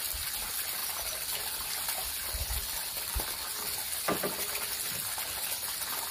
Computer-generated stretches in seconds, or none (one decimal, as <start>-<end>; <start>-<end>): none